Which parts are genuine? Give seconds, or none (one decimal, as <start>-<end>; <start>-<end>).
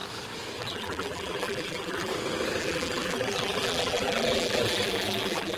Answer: 0.0-0.6; 2.1-2.6